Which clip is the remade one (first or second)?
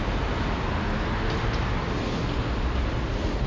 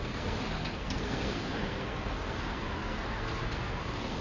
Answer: second